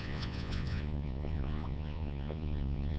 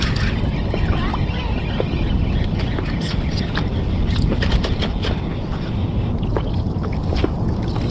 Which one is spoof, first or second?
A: first